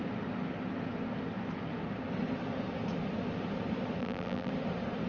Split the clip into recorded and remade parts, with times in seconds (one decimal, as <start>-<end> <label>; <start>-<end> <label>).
0.0-4.0 recorded; 4.0-4.5 remade; 4.5-5.1 recorded